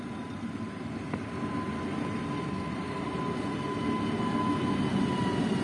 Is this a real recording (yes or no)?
yes